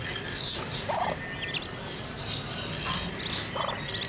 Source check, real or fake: real